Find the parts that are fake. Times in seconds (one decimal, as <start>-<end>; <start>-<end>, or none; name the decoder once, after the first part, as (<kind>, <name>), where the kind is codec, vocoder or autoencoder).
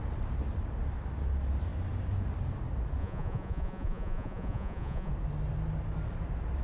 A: 3.0-5.1 (vocoder, Vocos)